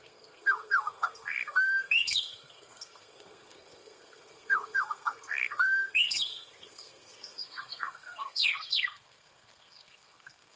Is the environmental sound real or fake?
fake